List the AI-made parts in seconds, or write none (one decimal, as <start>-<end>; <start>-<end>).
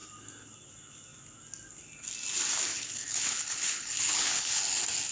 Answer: 2.7-4.6